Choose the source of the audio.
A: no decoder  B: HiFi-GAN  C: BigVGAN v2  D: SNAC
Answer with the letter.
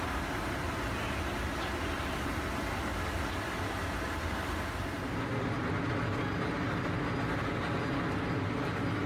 A